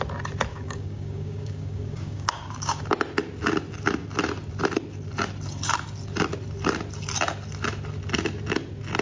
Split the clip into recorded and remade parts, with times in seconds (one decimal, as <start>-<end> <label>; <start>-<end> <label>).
0.0-0.5 recorded; 0.5-2.8 remade; 2.8-9.0 recorded